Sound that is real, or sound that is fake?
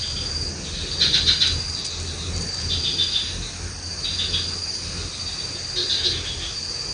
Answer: real